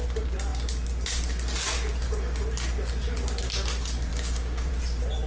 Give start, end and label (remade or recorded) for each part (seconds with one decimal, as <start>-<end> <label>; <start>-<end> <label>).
0.0-4.1 recorded; 4.1-4.7 remade; 4.7-5.3 recorded